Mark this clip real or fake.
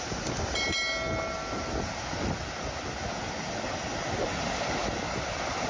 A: real